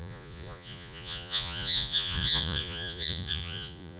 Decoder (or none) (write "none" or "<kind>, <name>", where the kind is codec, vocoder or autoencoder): vocoder, Vocos